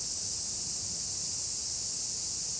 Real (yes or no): yes